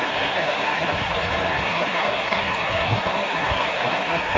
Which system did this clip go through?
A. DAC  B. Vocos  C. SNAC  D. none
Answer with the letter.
C